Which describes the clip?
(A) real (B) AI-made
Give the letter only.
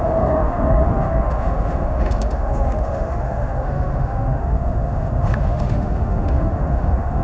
B